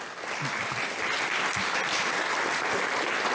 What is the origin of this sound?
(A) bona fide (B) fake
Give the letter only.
A